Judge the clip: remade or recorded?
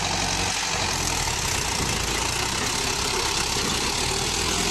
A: recorded